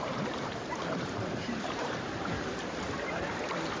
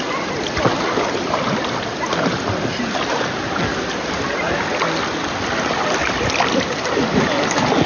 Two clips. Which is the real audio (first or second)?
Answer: second